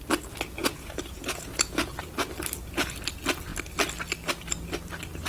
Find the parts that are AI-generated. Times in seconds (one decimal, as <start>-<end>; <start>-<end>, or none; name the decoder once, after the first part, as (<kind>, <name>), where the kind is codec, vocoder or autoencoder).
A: 0.6-2.0 (vocoder, Vocos)